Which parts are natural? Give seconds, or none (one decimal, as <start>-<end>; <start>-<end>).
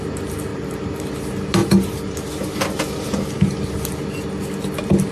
0.0-0.5; 1.1-5.1